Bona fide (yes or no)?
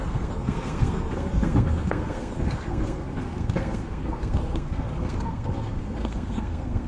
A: no